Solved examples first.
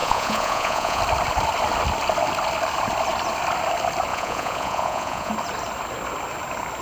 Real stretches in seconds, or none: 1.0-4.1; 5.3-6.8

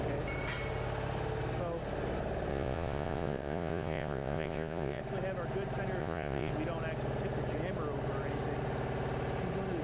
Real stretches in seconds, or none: 0.0-2.5; 5.0-6.0; 6.5-9.8

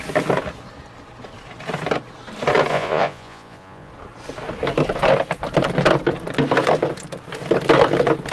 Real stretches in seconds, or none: 0.0-2.7; 3.9-8.3

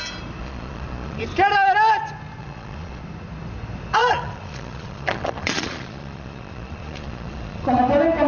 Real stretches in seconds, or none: 0.0-0.4; 1.2-2.4; 3.0-4.0; 7.8-8.3

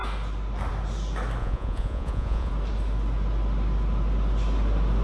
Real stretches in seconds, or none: 0.0-1.4; 2.5-5.0

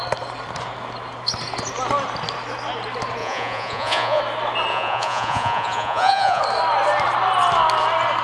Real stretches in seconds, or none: 0.0-3.2; 4.2-4.7; 6.4-8.2

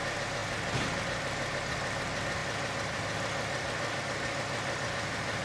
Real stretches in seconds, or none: 0.0-5.4

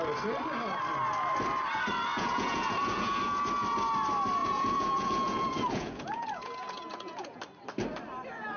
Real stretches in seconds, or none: 0.0-2.1; 3.2-4.4; 7.4-8.6